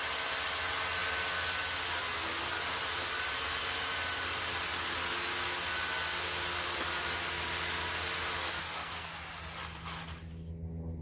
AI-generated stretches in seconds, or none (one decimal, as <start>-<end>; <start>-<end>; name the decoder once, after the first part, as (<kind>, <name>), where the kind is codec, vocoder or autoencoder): 8.6-9.1 (codec, SNAC)

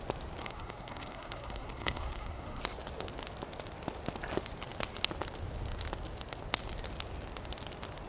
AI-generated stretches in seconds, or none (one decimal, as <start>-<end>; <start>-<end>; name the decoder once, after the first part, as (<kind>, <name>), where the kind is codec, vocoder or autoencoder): 0.4-2.6 (codec, SNAC)

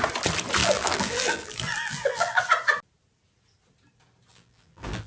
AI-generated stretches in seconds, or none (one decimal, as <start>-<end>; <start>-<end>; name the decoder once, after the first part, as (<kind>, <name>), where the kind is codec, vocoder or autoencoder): 0.6-2.4 (vocoder, BigVGAN v2); 4.3-5.1

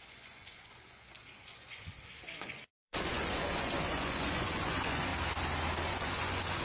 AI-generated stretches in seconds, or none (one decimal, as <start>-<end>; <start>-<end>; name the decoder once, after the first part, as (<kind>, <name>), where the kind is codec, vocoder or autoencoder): 0.0-5.1 (vocoder, Vocos); 5.9-6.6

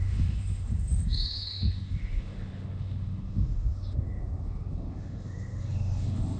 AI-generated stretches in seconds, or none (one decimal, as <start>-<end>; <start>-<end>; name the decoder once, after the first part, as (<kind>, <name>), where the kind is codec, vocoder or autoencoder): 0.0-6.4 (autoencoder, DAC-VAE)

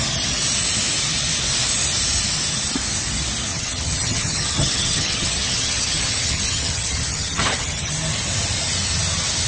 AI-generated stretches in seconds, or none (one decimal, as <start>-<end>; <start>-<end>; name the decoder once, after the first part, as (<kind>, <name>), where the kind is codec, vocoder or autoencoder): 3.5-7.9 (vocoder, HiFi-GAN)